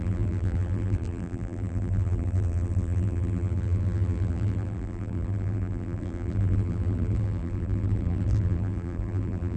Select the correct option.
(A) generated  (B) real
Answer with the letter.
A